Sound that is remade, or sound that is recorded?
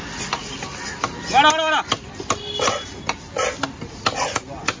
recorded